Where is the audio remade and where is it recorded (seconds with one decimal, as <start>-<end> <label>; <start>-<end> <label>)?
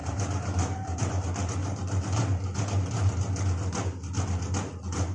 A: 0.0-1.1 remade; 1.1-1.6 recorded; 1.6-2.9 remade; 2.9-5.1 recorded